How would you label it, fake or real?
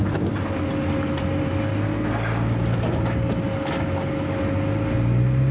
real